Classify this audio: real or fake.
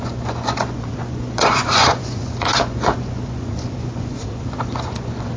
fake